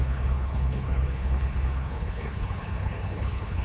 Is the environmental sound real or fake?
fake